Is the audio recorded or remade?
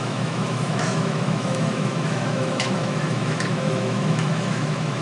remade